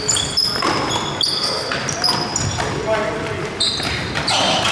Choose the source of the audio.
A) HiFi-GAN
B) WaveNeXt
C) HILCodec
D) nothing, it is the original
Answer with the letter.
D